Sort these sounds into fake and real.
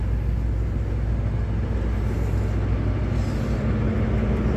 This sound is real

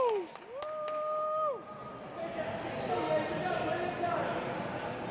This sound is real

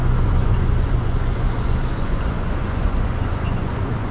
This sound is fake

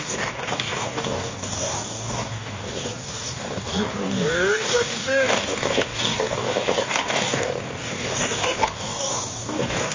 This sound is fake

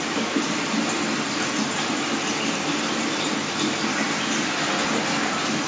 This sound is real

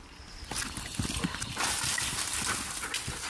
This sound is real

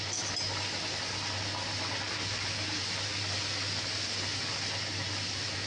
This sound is real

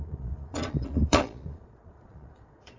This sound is fake